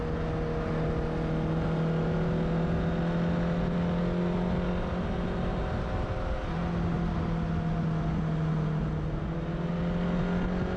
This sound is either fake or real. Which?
real